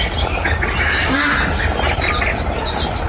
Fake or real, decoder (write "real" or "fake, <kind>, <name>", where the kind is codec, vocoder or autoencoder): real